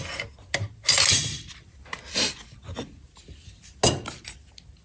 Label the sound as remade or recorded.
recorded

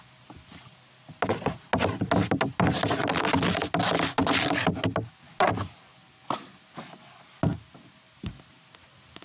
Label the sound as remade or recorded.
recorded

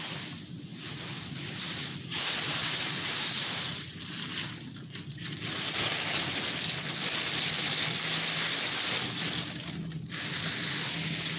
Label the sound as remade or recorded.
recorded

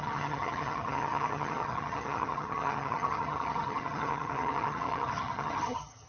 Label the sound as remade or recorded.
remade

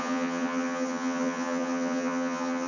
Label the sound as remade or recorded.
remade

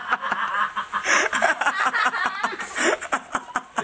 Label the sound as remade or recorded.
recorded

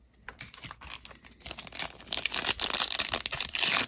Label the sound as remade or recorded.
recorded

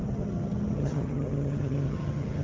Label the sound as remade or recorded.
remade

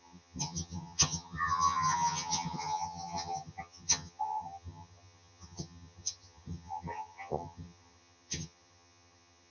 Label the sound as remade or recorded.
remade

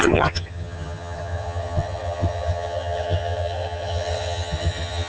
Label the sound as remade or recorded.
remade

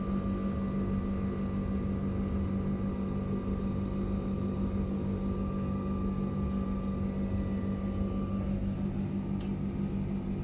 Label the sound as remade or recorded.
recorded